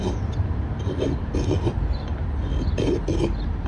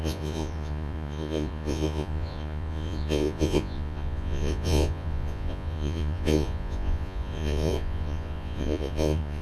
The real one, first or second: first